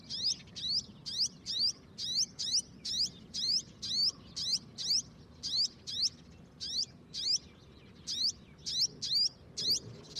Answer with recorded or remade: recorded